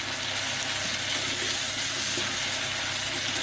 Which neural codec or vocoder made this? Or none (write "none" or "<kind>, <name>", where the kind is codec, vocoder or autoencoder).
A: none